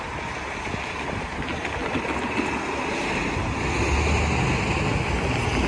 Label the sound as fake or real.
real